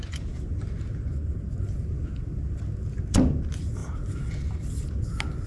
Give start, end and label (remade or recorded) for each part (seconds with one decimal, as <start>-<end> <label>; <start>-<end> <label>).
0.0-5.5 recorded